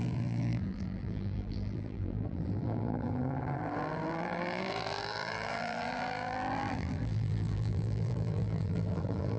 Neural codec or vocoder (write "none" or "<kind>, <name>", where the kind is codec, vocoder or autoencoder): vocoder, BigVGAN v2